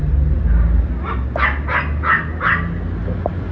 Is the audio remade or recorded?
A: recorded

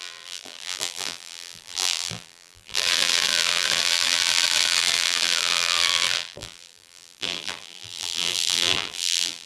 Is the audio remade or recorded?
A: remade